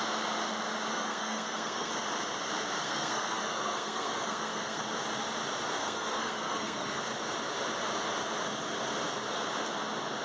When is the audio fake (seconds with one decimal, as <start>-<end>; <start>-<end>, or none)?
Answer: 0.9-1.9; 2.8-4.8; 5.8-7.0